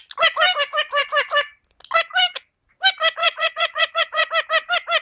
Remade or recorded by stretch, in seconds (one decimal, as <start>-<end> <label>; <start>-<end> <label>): 0.0-3.2 recorded; 3.2-4.3 remade; 4.3-5.0 recorded